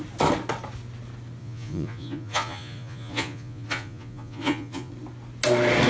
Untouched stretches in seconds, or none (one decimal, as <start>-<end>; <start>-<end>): 0.0-1.4; 4.9-5.9